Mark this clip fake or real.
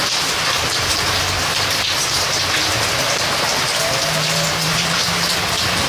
fake